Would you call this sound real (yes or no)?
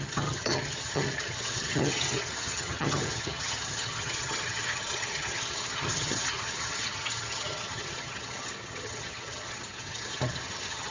no